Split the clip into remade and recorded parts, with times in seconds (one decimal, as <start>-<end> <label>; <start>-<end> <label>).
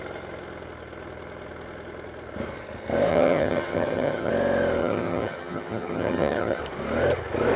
0.0-3.1 recorded; 3.1-4.3 remade; 4.3-4.8 recorded; 4.8-6.6 remade; 6.6-7.6 recorded